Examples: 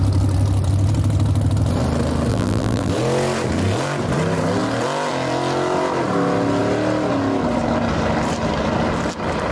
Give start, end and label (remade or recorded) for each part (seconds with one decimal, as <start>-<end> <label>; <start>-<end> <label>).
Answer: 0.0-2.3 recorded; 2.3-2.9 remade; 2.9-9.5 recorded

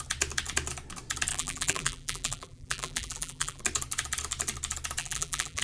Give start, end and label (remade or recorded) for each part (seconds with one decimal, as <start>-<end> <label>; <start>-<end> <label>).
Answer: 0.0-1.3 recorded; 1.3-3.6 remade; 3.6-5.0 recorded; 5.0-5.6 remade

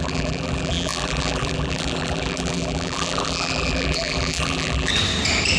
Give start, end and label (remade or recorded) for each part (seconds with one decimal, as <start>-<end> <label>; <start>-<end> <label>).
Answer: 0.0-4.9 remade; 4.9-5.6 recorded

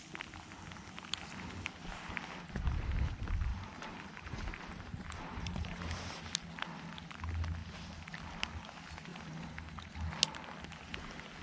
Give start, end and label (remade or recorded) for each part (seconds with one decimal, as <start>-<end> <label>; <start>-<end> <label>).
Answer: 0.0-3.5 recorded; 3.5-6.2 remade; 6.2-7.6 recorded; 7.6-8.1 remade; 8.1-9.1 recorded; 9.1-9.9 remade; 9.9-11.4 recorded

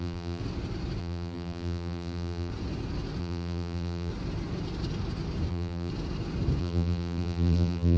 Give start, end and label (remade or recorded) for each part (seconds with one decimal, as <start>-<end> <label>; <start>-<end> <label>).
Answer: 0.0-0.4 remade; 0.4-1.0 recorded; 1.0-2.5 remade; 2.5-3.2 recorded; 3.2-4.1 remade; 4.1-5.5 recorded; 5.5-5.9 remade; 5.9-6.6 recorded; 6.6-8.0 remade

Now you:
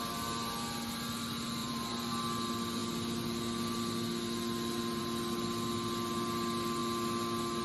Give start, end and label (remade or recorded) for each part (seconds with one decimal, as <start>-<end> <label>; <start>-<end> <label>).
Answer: 0.0-1.6 recorded; 1.6-2.1 remade; 2.1-7.6 recorded

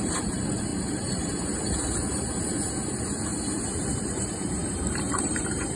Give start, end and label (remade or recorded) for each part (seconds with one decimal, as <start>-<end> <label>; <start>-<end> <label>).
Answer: 0.0-5.8 remade